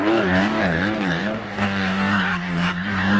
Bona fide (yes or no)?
no